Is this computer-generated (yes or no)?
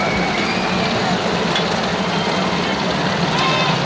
no